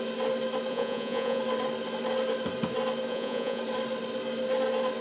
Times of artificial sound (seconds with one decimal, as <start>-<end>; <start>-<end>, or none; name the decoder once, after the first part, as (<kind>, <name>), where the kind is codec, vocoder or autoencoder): 0.7-1.4 (vocoder, Vocos); 3.1-3.6

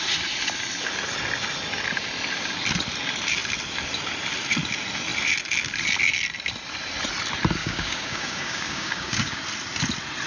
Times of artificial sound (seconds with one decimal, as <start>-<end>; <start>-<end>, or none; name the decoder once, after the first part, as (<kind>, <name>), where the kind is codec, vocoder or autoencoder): 7.6-9.4 (codec, DAC)

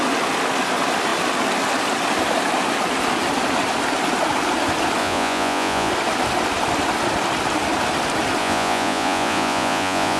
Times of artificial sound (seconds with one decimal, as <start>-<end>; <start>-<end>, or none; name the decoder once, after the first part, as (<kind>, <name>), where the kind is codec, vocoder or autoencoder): 5.0-5.9 (vocoder, Vocos); 8.4-10.2

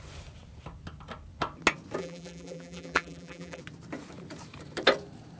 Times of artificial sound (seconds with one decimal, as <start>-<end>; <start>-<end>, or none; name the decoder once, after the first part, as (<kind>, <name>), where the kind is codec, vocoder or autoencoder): 2.0-3.6 (vocoder, BigVGAN v2)

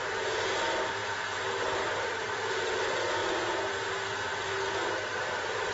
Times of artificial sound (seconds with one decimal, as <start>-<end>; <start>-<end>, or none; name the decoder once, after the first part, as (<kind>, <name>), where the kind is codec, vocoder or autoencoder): 1.0-1.5 (vocoder, Vocos); 3.2-3.9

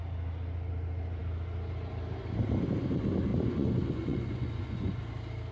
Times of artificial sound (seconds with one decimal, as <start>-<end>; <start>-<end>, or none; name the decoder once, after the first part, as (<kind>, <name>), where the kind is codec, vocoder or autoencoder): 3.3-5.0 (vocoder, Vocos)